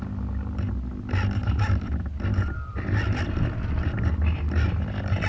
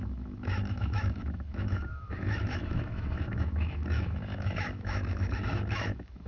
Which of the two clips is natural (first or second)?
first